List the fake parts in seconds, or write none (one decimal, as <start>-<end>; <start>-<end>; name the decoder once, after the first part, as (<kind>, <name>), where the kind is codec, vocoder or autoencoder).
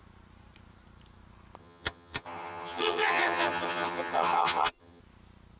1.6-5.0 (vocoder, HiFi-GAN)